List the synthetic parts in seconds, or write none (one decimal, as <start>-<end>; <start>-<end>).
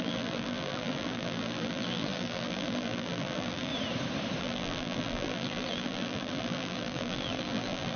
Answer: 0.0-3.7; 4.4-8.0